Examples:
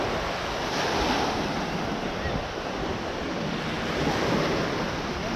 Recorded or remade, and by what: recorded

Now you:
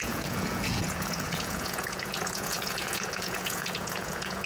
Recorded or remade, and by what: remade, vocoder, Vocos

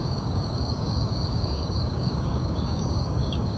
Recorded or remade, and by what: remade, codec, DAC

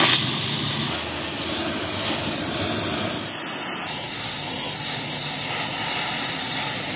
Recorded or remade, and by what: recorded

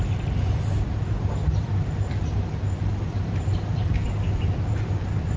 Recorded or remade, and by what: recorded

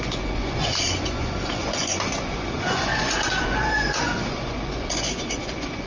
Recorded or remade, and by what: remade, vocoder, Vocos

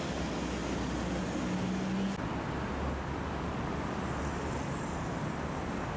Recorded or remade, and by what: recorded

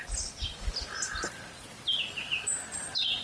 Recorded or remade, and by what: recorded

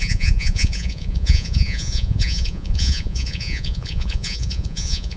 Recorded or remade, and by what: remade, vocoder, Vocos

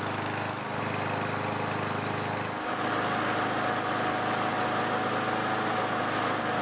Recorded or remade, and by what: recorded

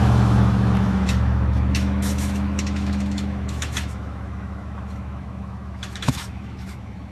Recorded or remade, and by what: remade, autoencoder, DAC-VAE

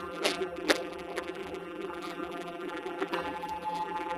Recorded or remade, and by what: remade, vocoder, BigVGAN v2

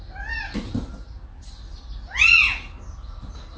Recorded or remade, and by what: recorded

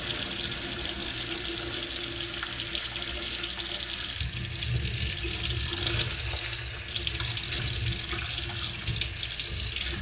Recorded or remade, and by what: recorded